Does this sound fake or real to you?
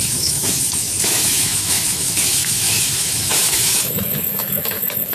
fake